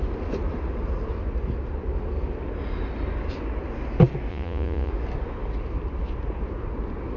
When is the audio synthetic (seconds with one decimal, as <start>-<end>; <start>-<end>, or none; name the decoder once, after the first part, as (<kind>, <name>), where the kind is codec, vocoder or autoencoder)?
4.3-4.9 (vocoder, Vocos)